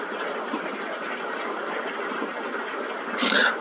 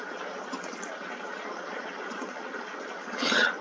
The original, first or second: first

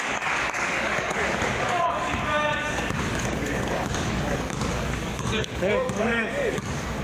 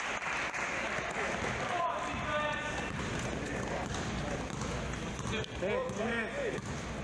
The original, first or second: second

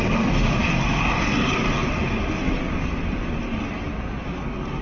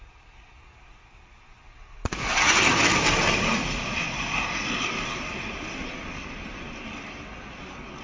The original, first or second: first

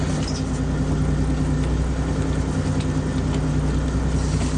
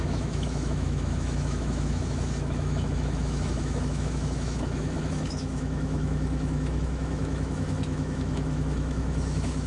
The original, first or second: first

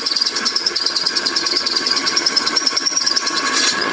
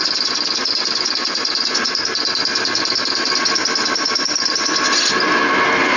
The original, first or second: second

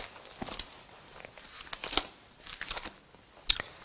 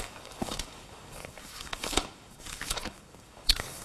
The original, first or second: first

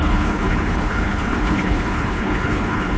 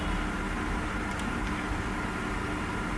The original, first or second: second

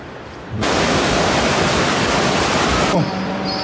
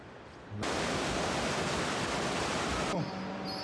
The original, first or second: second